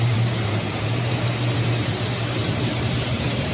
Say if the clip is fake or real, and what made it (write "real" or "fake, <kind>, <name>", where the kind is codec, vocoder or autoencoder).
fake, vocoder, BigVGAN v2